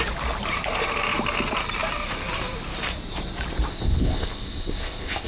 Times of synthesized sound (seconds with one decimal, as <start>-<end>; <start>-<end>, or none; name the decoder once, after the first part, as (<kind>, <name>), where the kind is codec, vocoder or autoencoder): 3.7-5.3 (codec, ZipCodec)